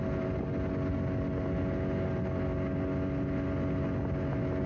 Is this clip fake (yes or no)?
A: no